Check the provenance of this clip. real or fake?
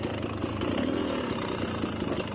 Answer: real